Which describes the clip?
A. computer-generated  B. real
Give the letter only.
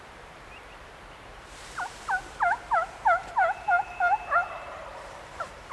A